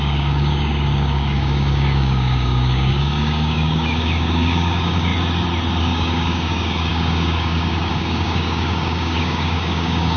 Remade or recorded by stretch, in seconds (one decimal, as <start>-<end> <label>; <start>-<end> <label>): 0.0-5.1 remade; 5.1-5.8 recorded; 5.8-10.2 remade

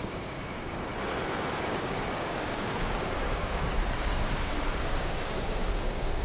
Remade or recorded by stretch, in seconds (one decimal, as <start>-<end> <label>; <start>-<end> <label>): 0.0-0.9 remade; 0.9-1.5 recorded; 1.5-6.2 remade

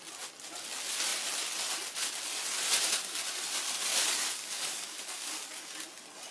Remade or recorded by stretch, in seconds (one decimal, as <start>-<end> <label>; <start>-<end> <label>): 0.0-3.9 recorded; 3.9-5.6 remade; 5.6-6.3 recorded

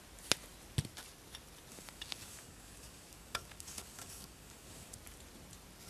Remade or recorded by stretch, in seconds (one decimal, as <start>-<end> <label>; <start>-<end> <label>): 0.0-1.7 recorded; 1.7-4.9 remade; 4.9-5.9 recorded

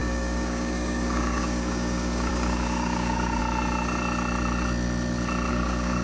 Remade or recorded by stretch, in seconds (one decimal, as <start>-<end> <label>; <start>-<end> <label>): 0.0-3.4 remade; 3.4-5.5 recorded; 5.5-6.0 remade